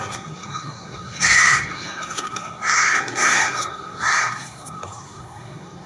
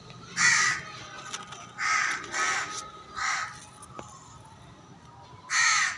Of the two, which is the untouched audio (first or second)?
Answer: second